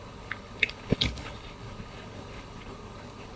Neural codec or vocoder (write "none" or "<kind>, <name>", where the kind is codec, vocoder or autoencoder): codec, HILCodec